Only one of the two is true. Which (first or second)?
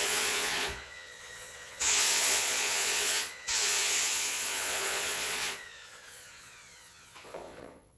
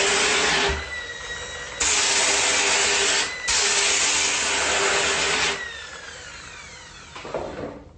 second